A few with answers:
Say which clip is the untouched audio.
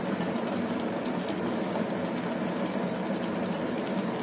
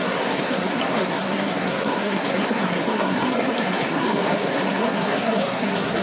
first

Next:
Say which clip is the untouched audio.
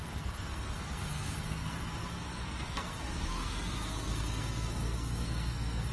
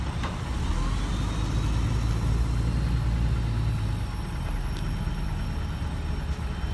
second